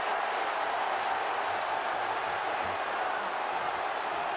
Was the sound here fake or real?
real